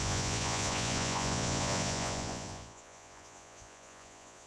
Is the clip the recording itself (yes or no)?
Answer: no